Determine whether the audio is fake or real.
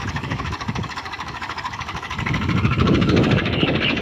fake